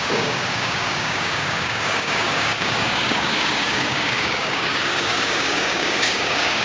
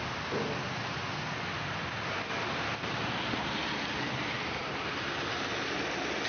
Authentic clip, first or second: second